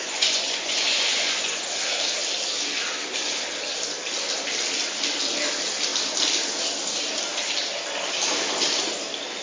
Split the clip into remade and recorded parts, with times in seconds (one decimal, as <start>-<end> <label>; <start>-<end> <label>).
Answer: 0.0-1.6 remade; 1.6-9.4 recorded